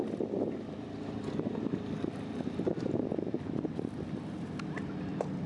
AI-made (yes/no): yes